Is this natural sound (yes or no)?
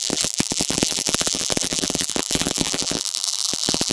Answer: no